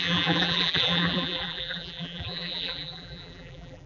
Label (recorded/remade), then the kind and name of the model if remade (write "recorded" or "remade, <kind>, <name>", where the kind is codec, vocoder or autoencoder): remade, vocoder, BigVGAN v2